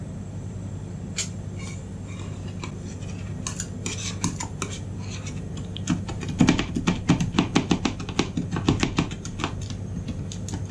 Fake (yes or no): no